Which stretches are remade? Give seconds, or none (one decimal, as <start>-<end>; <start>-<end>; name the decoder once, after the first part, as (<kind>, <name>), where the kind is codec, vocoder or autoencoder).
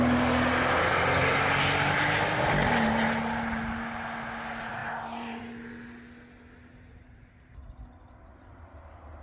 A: none